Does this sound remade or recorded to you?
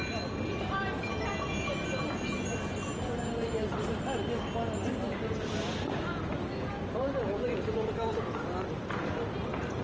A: recorded